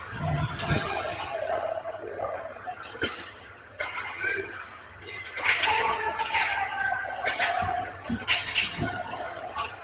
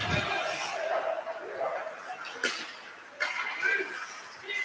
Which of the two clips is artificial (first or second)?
first